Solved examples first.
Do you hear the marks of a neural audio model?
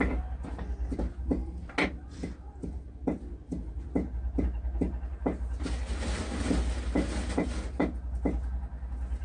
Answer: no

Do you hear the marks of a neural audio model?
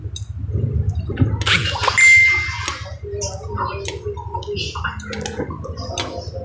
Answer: no